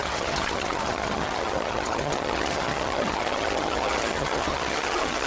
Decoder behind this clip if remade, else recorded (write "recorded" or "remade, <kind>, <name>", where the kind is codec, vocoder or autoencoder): remade, vocoder, HiFi-GAN